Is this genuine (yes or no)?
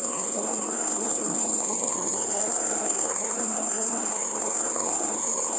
no